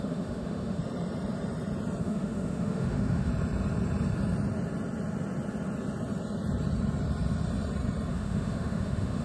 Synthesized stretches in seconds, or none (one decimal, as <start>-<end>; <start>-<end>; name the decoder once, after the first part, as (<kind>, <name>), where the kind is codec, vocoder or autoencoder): 0.0-0.8 (autoencoder, DAC-VAE); 2.0-3.3; 8.1-9.2